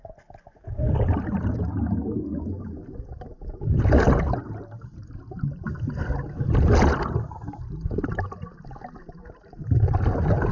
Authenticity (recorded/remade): recorded